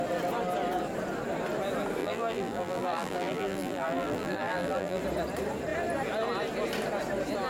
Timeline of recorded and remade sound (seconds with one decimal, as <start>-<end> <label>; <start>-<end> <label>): 0.0-2.0 recorded; 2.0-5.0 remade; 5.0-7.5 recorded